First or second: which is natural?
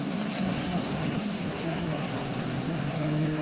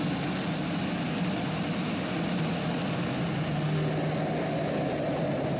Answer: second